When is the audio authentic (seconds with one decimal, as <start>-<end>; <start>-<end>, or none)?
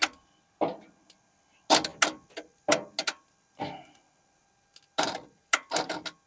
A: 0.0-6.3